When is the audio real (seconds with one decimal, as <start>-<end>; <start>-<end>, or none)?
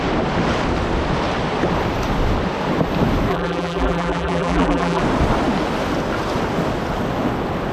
0.0-3.3; 5.0-7.7